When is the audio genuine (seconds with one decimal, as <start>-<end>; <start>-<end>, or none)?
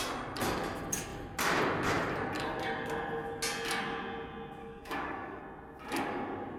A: 0.0-4.6; 5.4-6.6